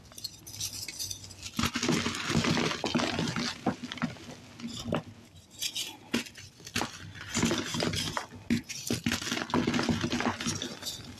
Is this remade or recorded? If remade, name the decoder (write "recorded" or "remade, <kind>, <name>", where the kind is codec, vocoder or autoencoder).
recorded